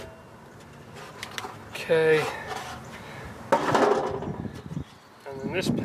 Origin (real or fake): real